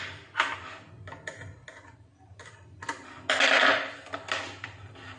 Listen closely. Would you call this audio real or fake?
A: real